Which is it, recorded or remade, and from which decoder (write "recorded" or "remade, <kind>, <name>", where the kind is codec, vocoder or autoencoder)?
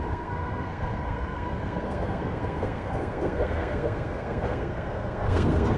remade, codec, SNAC